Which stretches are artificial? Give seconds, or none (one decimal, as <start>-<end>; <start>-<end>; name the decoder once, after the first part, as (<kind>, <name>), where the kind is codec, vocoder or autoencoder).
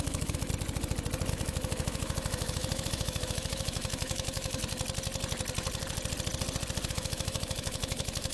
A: 0.0-0.5 (autoencoder, DAC-VAE); 1.3-4.6; 6.9-8.3